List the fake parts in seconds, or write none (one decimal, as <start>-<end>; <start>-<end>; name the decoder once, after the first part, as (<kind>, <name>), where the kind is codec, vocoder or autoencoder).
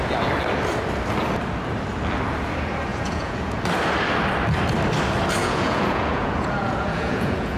2.9-3.6 (vocoder, Vocos); 5.4-7.6